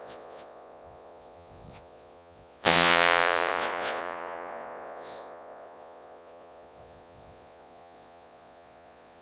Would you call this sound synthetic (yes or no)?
yes